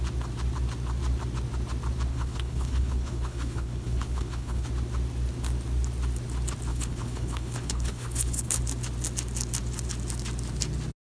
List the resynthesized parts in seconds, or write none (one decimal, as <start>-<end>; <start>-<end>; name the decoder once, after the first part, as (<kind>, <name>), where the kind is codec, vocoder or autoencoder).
2.1-4.7 (codec, HILCodec); 6.7-8.6